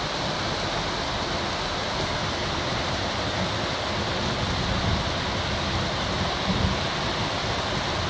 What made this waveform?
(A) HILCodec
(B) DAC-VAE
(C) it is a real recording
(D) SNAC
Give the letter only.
C